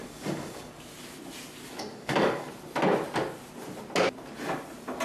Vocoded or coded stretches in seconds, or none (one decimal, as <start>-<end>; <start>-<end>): 0.0-0.7; 1.9-2.5